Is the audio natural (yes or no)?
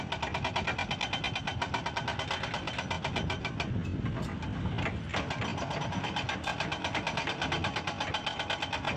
yes